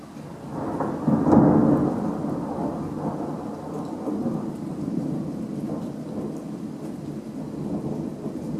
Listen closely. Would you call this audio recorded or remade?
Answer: recorded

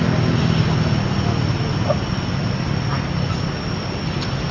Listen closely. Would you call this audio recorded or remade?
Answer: recorded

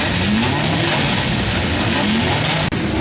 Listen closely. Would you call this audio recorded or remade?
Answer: recorded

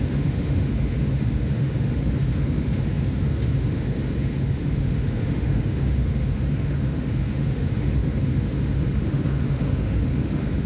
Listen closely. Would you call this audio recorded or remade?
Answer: remade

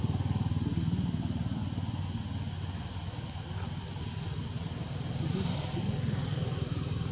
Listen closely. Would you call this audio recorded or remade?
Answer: recorded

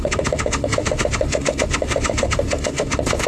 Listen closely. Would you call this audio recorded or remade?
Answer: remade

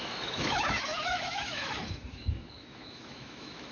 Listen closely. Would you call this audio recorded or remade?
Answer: remade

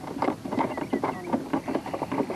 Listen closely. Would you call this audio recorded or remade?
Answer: recorded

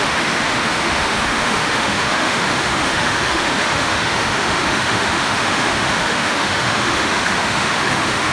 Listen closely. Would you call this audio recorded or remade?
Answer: remade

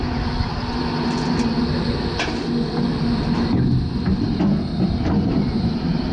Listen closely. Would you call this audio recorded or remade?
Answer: recorded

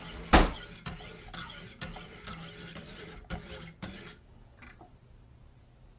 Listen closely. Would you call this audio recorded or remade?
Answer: recorded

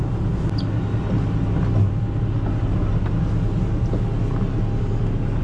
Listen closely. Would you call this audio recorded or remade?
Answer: recorded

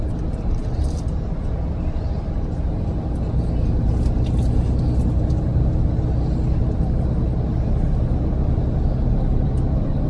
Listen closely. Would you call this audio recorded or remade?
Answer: recorded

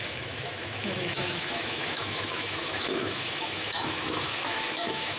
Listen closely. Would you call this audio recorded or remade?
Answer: remade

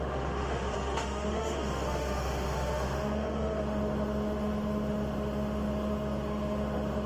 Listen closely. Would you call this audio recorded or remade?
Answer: remade